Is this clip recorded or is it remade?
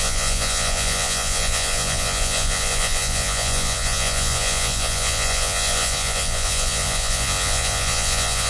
remade